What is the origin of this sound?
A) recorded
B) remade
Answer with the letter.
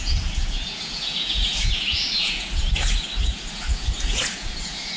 B